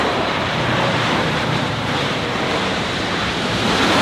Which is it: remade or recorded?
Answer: remade